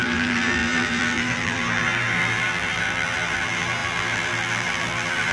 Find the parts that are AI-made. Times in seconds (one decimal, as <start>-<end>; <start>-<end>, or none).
0.0-5.3